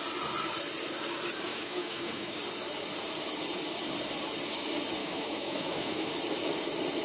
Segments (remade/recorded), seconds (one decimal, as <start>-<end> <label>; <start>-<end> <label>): 0.0-1.5 recorded; 1.5-2.4 remade; 2.4-5.0 recorded; 5.0-6.1 remade; 6.1-7.0 recorded